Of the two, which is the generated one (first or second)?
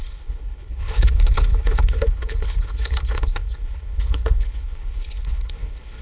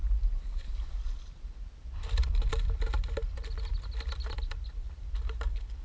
first